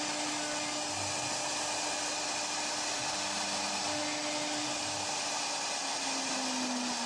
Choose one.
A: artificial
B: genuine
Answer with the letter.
B